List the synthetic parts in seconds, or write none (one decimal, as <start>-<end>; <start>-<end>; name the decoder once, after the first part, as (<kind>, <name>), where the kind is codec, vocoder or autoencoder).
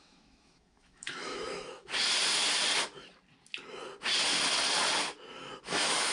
0.0-1.9 (autoencoder, DAC-VAE); 5.6-6.1